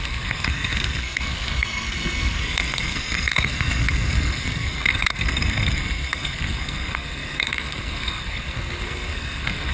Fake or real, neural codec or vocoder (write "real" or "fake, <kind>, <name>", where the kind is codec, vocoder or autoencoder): fake, codec, SNAC